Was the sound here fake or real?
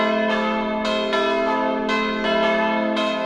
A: real